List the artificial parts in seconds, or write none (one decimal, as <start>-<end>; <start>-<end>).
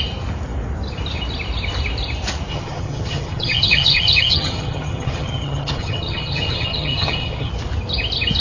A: 2.5-7.5